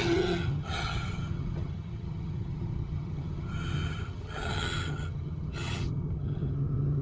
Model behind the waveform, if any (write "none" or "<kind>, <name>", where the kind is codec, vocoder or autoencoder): vocoder, HiFi-GAN